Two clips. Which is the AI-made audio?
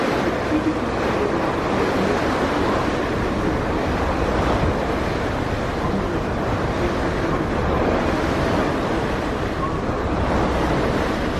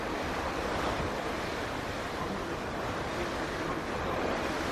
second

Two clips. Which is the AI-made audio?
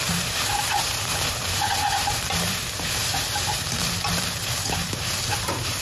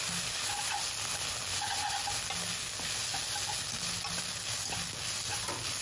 first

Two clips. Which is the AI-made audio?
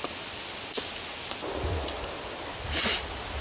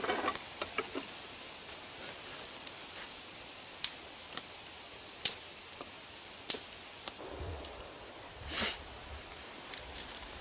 second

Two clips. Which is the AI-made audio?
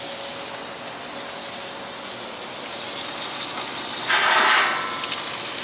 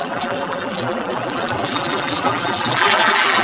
second